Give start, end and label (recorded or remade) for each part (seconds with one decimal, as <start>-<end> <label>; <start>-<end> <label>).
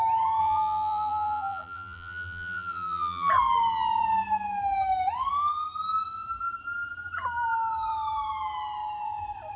0.0-0.4 recorded; 0.4-3.3 remade; 3.3-9.6 recorded